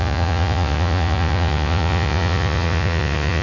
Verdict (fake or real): fake